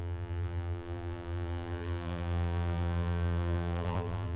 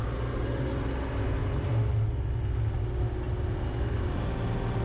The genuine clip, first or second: second